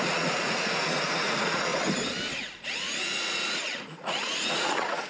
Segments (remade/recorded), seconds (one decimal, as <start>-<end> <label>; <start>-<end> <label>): 0.0-1.7 remade; 1.7-2.7 recorded; 2.7-5.1 remade